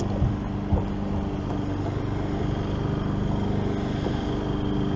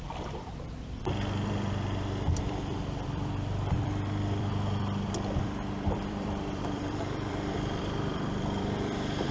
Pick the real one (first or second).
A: first